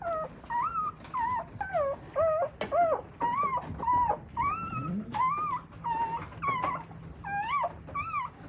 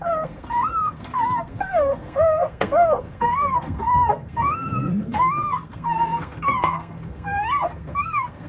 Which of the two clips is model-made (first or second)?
second